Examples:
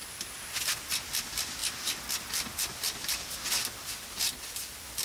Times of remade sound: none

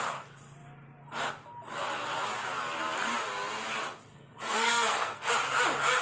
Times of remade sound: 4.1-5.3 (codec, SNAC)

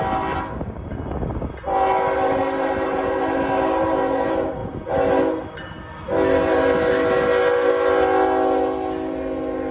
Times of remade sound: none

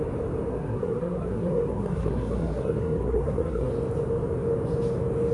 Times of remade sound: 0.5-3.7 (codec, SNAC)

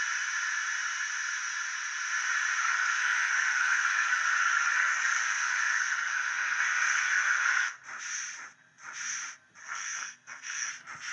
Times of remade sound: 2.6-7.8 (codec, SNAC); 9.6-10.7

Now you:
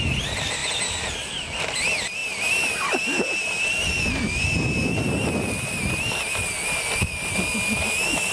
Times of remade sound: none

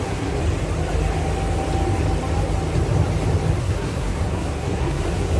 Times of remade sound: 0.0-0.4 (codec, SNAC); 3.6-5.4

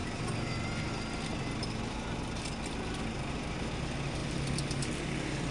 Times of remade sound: none